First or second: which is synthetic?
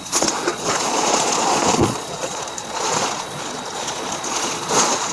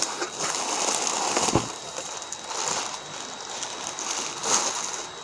first